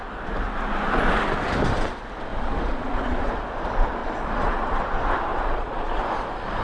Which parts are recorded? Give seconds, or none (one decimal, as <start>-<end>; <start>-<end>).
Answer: 0.0-2.3; 3.3-4.0; 4.8-5.3; 6.0-6.6